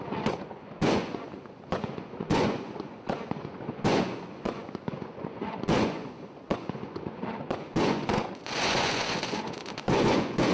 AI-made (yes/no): yes